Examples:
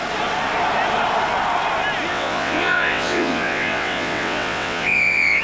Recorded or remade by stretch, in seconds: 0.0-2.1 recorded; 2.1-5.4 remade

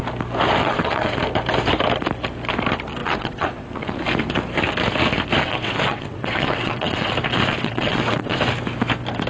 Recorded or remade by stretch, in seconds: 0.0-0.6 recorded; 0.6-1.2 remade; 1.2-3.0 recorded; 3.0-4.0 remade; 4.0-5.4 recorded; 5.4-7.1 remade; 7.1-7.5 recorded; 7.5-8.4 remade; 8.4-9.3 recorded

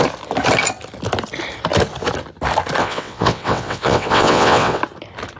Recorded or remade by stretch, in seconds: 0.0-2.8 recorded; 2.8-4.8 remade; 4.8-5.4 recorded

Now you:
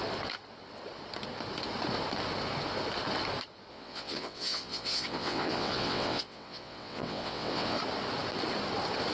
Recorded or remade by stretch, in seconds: 0.0-3.7 recorded; 3.7-7.8 remade; 7.8-9.1 recorded